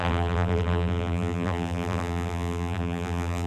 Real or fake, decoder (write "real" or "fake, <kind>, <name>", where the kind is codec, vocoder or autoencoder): fake, vocoder, BigVGAN v2